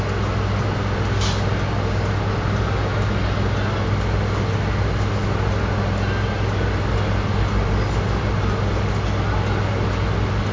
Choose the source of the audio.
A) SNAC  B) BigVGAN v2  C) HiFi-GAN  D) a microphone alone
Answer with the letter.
D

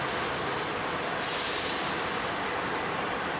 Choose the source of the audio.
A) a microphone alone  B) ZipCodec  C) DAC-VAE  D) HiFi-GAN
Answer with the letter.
A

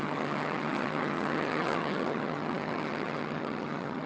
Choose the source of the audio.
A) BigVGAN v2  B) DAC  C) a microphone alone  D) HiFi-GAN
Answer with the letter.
D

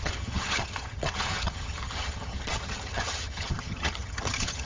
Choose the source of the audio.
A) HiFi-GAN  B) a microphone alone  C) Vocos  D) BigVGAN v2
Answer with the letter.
A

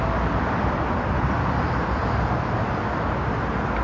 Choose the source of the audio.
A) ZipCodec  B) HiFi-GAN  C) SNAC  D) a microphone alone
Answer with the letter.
D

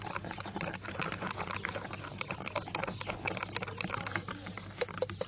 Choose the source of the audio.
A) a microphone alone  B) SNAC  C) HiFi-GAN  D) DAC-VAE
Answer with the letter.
A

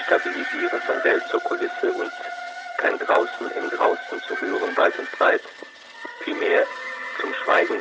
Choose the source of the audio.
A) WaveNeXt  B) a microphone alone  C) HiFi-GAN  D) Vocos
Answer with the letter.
C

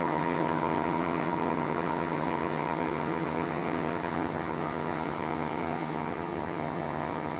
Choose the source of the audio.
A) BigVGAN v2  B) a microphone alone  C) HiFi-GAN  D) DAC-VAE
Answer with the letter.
C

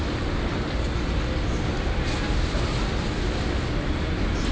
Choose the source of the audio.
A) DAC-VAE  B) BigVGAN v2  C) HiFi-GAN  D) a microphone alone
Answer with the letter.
D